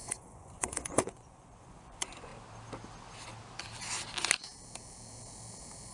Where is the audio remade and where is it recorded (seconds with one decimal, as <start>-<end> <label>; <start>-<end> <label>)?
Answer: 0.0-2.3 remade; 2.3-5.9 recorded